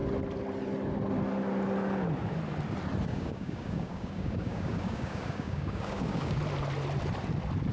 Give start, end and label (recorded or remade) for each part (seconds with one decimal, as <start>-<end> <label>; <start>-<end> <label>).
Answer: 0.0-3.1 recorded; 3.1-6.4 remade; 6.4-7.7 recorded